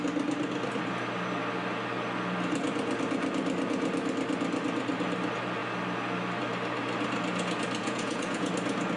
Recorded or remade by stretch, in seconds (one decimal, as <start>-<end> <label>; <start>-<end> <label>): 0.0-7.8 recorded; 7.8-8.5 remade; 8.5-9.0 recorded